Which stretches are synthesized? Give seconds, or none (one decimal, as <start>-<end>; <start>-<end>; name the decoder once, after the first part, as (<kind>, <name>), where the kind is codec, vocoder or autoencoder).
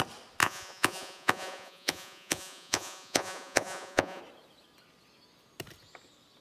0.4-4.2 (vocoder, Vocos)